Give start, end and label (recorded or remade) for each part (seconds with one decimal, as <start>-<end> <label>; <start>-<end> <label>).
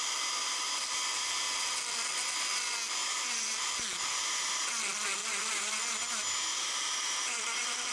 0.0-3.0 recorded; 3.0-4.7 remade; 4.7-5.2 recorded; 5.2-5.8 remade; 5.8-6.5 recorded; 6.5-7.9 remade